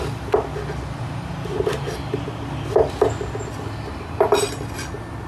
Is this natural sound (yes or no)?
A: yes